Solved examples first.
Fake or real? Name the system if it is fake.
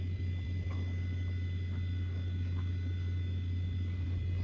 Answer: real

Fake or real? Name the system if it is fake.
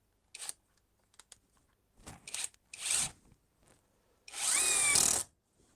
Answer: real